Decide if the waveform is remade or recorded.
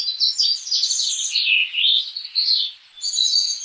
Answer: recorded